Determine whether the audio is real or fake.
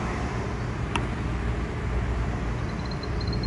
real